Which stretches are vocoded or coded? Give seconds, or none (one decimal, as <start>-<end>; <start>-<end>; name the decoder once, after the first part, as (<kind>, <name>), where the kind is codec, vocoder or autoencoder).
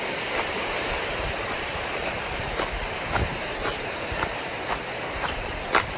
0.5-2.0 (vocoder, BigVGAN v2); 3.7-5.6